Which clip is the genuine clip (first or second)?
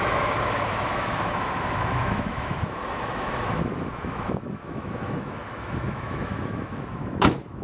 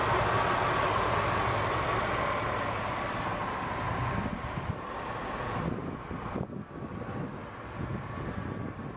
second